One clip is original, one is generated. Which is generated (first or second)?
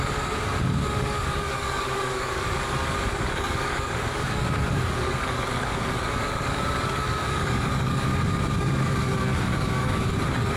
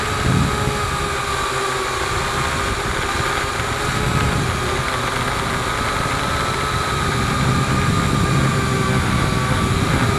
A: first